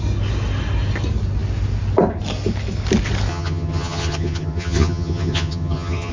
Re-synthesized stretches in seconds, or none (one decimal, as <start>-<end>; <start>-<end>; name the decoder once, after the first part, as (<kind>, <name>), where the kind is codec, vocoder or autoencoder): 3.3-6.1 (vocoder, HiFi-GAN)